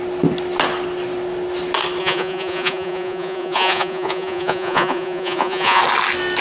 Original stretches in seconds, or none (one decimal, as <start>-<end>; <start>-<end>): 0.0-2.0; 5.8-6.4